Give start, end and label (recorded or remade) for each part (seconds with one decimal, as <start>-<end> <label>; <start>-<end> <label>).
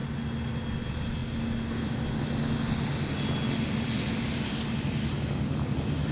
0.0-6.1 recorded